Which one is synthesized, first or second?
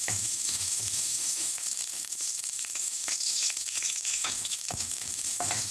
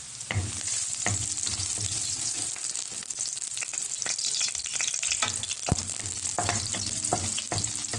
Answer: first